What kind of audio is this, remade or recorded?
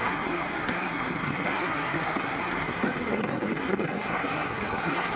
remade